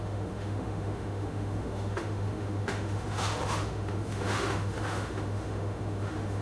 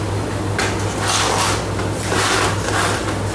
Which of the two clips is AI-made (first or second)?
first